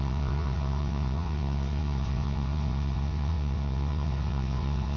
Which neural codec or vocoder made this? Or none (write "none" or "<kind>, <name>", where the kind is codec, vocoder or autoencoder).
vocoder, WaveNeXt